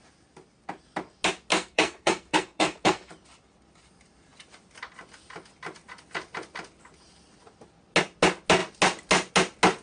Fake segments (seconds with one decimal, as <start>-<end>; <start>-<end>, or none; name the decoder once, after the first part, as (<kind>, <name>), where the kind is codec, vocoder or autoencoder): 1.5-3.1 (codec, SNAC)